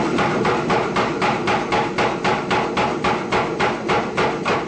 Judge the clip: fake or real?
real